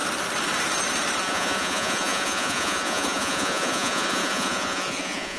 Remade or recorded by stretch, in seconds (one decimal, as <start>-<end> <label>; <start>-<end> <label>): 0.0-1.2 recorded; 1.2-5.4 remade